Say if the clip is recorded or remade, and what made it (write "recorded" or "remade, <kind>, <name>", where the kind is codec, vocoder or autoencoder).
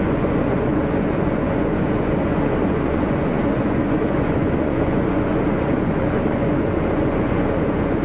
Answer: remade, vocoder, Vocos